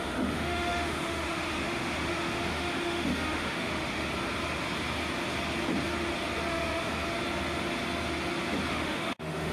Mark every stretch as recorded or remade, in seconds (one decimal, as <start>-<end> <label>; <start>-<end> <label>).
0.0-4.1 remade; 4.1-6.5 recorded; 6.5-6.9 remade; 6.9-8.7 recorded; 8.7-9.5 remade